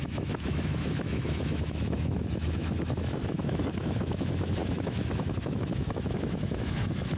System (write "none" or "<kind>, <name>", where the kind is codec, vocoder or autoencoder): autoencoder, DAC-VAE